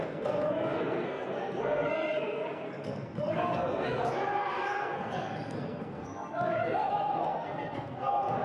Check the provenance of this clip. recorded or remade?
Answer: remade